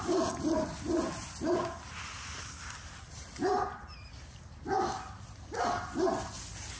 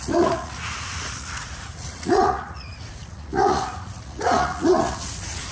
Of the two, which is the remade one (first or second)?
second